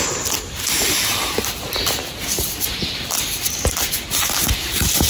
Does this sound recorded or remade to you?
recorded